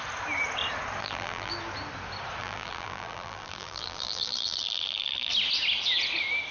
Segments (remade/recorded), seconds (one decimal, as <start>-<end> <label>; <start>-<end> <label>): 0.0-1.0 recorded; 1.0-1.5 remade; 1.5-2.4 recorded; 2.4-5.3 remade; 5.3-6.5 recorded